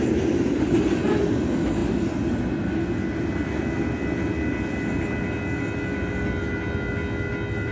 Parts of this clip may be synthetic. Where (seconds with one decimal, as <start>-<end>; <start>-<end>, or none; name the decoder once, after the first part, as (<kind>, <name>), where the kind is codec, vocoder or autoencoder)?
none